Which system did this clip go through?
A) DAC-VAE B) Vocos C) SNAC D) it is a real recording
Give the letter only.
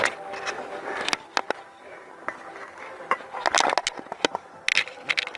D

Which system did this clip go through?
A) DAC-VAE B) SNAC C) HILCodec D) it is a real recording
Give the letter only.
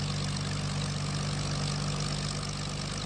D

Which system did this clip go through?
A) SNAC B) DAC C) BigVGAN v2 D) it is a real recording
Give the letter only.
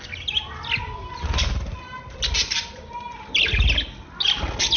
D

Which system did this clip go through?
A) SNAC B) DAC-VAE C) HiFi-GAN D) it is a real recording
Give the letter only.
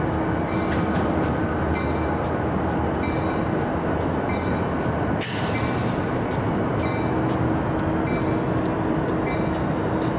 D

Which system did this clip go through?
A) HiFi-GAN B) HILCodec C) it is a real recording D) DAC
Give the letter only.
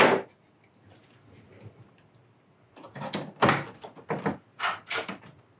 C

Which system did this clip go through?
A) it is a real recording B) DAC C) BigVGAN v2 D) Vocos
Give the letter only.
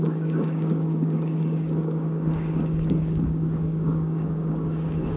B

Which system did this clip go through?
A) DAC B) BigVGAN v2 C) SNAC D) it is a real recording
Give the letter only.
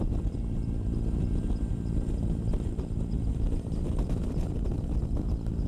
B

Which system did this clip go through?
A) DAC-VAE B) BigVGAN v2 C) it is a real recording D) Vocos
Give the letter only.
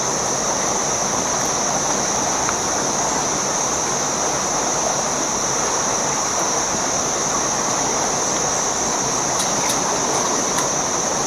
C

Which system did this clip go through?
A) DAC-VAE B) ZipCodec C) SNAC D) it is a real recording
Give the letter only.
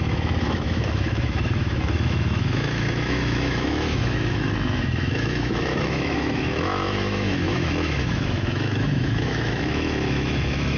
A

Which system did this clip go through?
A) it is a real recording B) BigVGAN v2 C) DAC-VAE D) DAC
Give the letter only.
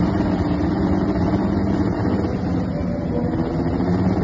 A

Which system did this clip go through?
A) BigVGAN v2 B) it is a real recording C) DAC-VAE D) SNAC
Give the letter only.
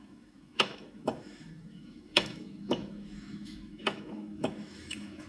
C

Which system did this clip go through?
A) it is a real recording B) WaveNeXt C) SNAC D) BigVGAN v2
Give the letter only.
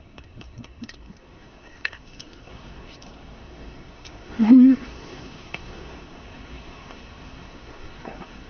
C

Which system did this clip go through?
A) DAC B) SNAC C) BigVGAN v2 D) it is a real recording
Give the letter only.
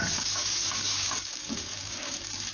A